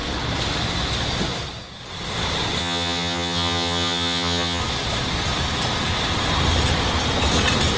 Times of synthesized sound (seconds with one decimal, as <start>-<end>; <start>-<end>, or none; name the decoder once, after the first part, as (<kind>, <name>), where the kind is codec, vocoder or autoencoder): 2.6-4.6 (vocoder, HiFi-GAN)